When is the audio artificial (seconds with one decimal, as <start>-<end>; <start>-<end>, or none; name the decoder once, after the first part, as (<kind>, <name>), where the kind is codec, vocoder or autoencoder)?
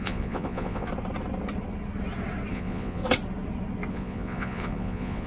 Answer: 0.0-0.9 (vocoder, Vocos); 2.5-3.0; 3.9-5.3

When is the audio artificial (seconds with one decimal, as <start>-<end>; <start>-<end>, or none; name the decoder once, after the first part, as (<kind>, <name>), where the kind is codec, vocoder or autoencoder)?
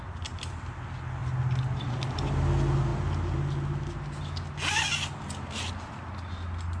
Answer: none